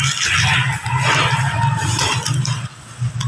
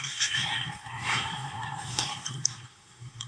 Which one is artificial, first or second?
second